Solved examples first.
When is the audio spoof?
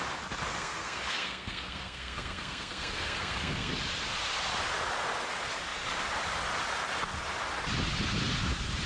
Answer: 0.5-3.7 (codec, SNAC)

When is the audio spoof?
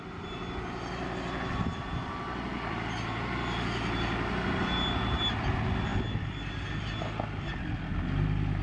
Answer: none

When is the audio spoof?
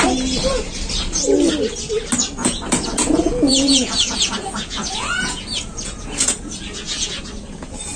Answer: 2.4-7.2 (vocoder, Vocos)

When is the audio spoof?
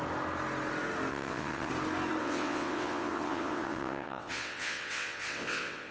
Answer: 1.1-1.7 (vocoder, WaveNeXt); 2.2-5.9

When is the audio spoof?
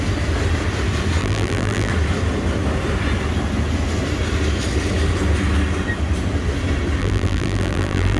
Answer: 1.2-1.9 (vocoder, BigVGAN v2); 7.0-8.2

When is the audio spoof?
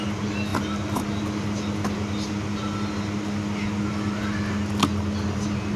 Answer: none